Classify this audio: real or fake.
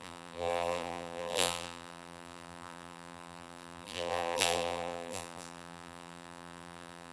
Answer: fake